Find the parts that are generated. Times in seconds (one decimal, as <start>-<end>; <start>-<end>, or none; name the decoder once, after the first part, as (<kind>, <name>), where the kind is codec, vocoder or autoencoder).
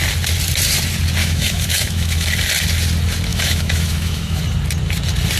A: 1.2-2.3 (autoencoder, DAC-VAE); 3.3-4.4